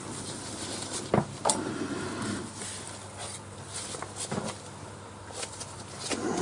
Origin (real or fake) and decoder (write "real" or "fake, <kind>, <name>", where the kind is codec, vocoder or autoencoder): real